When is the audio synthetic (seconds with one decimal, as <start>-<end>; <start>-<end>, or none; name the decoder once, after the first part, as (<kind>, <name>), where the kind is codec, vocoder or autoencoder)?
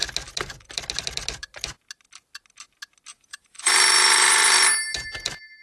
3.1-4.6 (vocoder, BigVGAN v2)